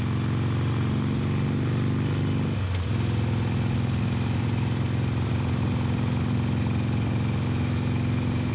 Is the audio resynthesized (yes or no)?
no